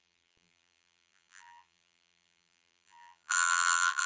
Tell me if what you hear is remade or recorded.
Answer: remade